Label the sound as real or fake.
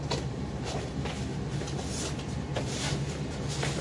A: real